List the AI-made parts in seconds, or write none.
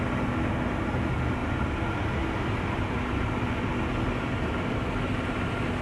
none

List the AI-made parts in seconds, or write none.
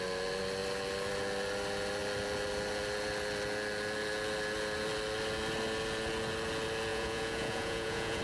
6.9-8.2 (vocoder, Vocos)